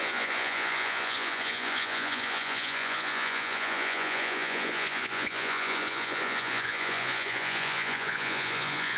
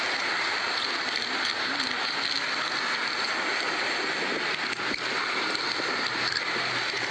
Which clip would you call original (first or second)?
second